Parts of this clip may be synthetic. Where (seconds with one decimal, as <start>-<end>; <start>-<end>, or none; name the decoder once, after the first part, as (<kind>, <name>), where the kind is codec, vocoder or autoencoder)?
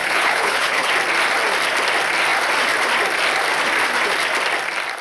0.0-0.9 (codec, HILCodec)